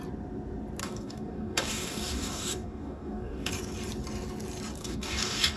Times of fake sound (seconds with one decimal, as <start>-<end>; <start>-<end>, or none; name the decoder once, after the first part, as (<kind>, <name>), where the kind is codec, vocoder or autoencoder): 0.8-3.5 (codec, DAC); 4.8-5.6

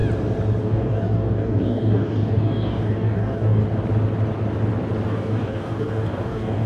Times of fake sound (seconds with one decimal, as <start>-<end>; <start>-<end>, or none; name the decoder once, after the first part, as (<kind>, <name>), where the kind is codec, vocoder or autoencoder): 0.6-3.6 (codec, DAC); 5.1-6.7

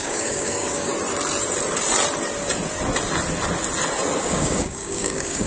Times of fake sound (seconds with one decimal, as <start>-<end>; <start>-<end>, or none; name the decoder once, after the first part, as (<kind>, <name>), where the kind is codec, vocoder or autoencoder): 0.0-0.9 (codec, DAC); 4.2-5.5

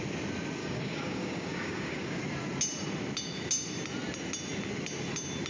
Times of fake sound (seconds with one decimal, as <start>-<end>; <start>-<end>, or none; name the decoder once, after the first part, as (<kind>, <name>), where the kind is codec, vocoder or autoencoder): 0.6-2.2 (codec, DAC)